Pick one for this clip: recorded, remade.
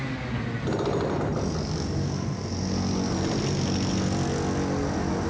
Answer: recorded